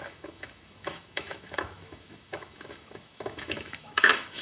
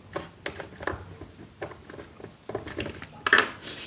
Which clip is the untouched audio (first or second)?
second